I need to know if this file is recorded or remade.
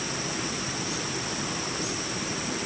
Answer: recorded